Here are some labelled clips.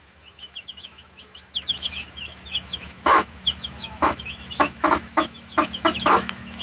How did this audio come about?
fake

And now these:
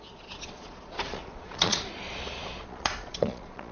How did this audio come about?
fake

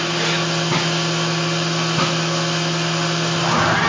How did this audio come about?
real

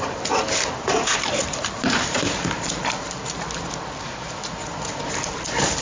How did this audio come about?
real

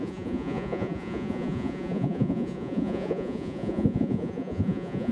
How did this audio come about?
fake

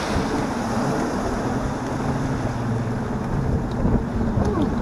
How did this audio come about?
real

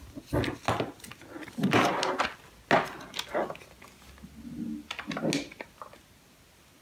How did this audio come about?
real